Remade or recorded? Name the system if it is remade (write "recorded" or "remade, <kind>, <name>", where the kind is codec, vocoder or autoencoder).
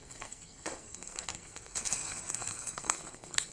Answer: remade, codec, SNAC